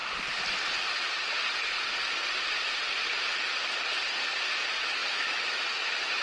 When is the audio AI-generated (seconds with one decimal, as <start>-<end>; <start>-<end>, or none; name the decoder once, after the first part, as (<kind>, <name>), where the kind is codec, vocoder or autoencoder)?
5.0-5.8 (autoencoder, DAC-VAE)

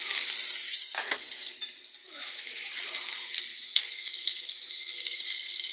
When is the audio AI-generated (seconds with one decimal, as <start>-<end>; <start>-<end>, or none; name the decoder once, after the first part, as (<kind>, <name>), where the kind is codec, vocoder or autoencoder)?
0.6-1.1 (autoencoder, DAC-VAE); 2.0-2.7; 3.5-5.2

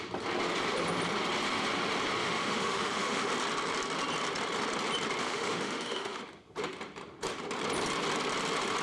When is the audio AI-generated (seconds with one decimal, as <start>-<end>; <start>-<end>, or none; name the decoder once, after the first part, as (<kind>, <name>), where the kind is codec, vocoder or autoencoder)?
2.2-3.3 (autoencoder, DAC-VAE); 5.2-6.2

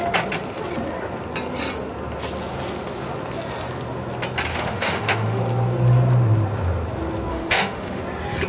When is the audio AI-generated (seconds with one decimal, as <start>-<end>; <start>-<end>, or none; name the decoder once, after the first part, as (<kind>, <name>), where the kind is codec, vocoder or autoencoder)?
4.5-5.4 (autoencoder, DAC-VAE); 7.3-8.0

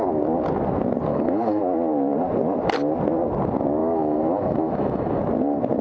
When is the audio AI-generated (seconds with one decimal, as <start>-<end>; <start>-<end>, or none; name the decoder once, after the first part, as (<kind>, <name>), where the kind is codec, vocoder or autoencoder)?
1.1-1.6 (autoencoder, DAC-VAE); 3.8-5.2

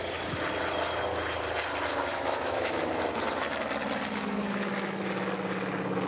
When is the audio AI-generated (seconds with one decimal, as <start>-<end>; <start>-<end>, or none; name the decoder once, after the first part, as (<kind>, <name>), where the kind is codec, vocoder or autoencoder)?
2.1-2.9 (autoencoder, DAC-VAE); 4.4-5.1

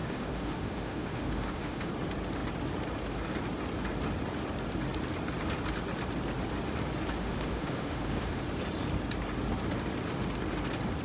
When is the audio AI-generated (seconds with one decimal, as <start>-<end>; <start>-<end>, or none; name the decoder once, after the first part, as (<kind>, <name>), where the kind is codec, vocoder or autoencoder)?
0.0-1.9 (autoencoder, DAC-VAE); 7.2-8.4